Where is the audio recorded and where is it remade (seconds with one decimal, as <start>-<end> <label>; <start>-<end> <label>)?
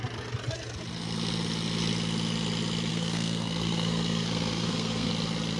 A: 0.0-2.9 recorded; 2.9-5.1 remade; 5.1-5.6 recorded